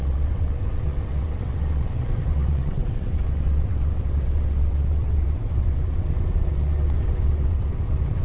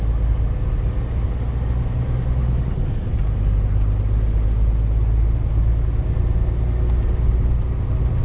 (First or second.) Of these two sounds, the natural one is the second